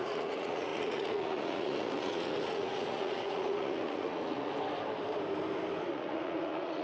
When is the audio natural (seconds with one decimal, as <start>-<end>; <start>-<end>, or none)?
4.5-5.9